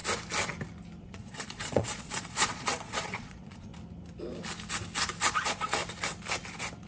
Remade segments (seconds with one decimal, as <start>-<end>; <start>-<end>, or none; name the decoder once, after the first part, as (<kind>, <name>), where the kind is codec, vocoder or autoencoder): 1.0-3.7 (vocoder, Vocos); 5.3-5.8